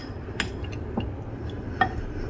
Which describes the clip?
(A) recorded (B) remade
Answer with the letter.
A